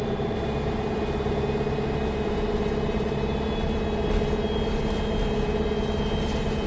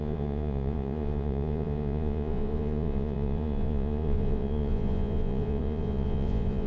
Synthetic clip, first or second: second